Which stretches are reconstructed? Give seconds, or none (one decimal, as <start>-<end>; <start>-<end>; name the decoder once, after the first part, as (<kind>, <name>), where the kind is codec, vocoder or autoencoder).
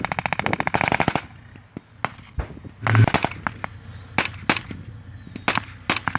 none